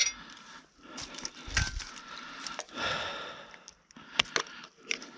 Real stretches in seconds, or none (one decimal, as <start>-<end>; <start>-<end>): 0.0-5.2